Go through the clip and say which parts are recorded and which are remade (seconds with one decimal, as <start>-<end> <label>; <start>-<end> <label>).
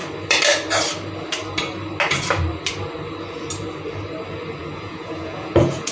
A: 0.0-4.6 recorded; 4.6-5.9 remade